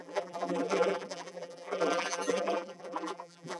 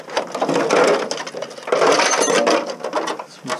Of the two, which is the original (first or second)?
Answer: second